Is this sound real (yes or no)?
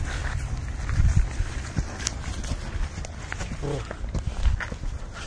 yes